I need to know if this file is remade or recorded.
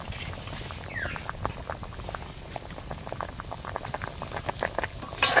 recorded